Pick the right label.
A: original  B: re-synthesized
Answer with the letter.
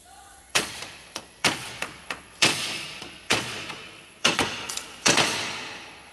B